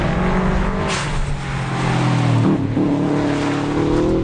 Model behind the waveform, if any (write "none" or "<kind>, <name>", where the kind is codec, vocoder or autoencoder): none